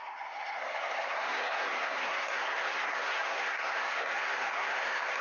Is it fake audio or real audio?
fake